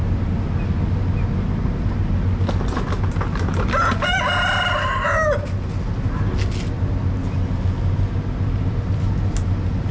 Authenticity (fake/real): real